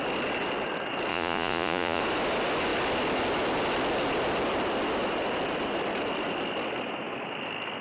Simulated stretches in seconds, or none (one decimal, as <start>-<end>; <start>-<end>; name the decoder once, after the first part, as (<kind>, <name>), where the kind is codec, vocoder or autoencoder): 1.1-2.0 (vocoder, Vocos)

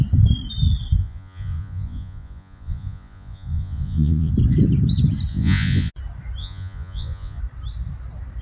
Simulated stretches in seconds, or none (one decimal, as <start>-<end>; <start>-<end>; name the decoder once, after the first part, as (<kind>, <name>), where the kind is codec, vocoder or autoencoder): 1.0-4.3 (vocoder, Vocos); 5.3-5.9; 6.4-7.4

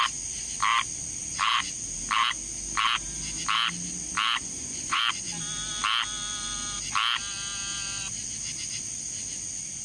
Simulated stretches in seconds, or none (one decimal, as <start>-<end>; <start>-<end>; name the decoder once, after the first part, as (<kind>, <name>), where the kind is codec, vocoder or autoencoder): 4.4-5.0 (vocoder, Vocos)

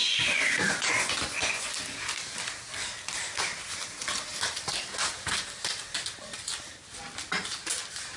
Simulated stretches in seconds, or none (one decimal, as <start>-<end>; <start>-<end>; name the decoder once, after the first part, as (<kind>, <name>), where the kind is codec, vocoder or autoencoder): 0.0-1.7 (vocoder, Vocos)

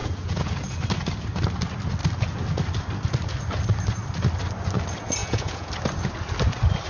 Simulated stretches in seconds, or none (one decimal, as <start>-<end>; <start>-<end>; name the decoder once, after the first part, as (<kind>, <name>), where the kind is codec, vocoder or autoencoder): 0.0-0.5 (vocoder, Vocos); 5.2-5.7